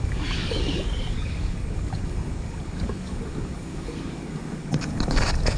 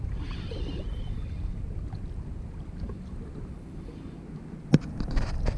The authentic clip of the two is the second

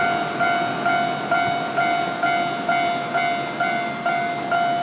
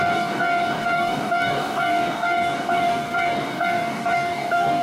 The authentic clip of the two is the first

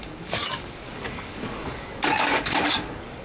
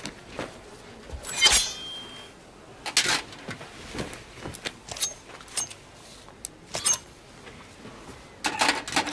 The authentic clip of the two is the second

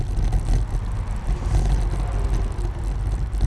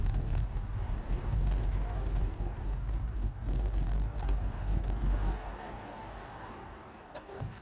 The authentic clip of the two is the first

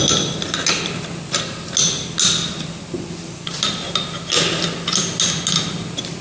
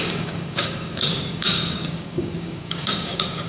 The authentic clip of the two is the first